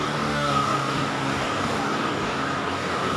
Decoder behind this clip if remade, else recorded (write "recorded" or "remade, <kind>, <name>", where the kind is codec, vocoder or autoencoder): remade, codec, DAC